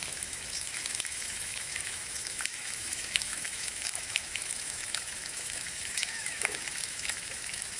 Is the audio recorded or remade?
remade